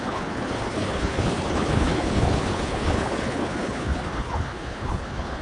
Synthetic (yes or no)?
yes